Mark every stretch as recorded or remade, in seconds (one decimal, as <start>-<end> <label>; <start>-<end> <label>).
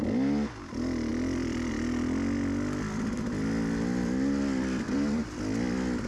0.0-1.1 recorded; 1.1-1.7 remade; 1.7-6.1 recorded